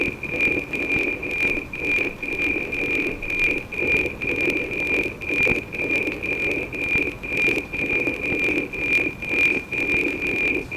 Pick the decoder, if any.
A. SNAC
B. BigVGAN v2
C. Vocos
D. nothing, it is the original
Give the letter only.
D